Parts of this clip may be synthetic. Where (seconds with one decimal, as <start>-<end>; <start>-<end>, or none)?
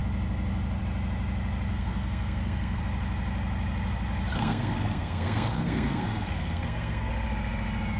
1.7-2.8; 4.3-7.1